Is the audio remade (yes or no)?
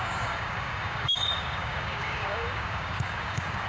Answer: yes